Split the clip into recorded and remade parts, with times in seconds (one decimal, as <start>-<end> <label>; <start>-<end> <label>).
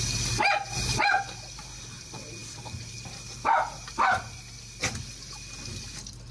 0.0-6.3 recorded